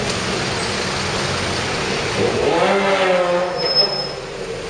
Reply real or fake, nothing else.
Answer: real